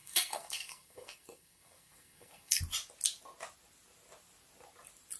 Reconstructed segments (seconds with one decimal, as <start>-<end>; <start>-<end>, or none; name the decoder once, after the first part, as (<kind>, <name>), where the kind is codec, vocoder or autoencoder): 0.0-2.6 (codec, SNAC)